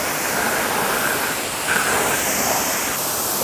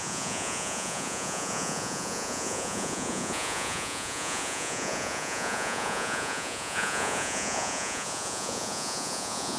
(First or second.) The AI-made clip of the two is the second